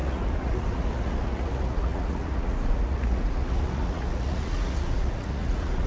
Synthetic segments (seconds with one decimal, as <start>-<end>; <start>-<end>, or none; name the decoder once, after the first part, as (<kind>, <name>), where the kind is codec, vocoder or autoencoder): 0.0-5.9 (vocoder, Vocos)